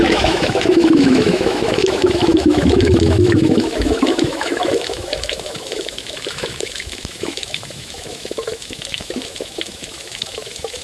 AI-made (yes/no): yes